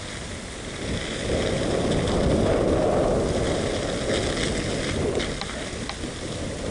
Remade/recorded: recorded